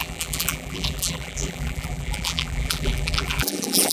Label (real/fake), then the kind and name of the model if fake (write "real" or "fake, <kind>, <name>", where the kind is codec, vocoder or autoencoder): fake, vocoder, BigVGAN v2